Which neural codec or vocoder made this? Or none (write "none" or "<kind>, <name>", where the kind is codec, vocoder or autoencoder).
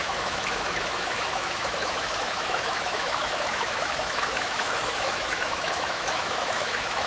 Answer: autoencoder, DAC-VAE